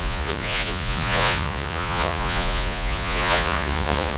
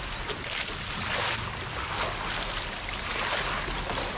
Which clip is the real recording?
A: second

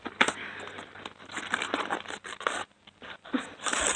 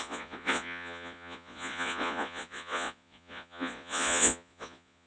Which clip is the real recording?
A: first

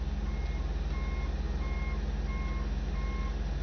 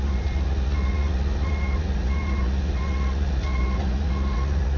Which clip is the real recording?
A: first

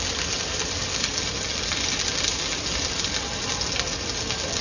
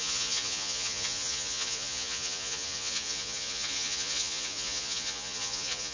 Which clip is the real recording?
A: first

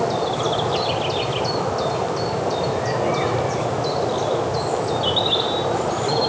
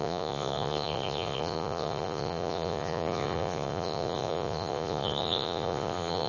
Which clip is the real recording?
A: first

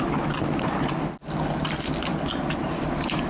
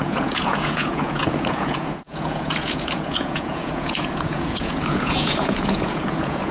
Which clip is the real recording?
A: first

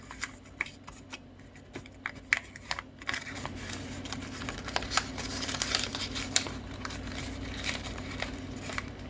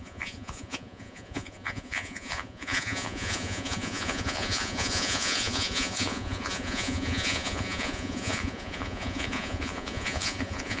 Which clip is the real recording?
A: first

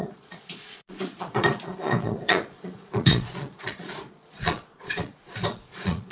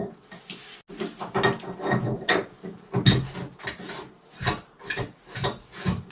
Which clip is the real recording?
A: second